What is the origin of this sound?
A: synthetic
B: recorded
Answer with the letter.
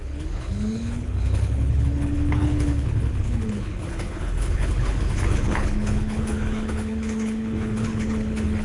A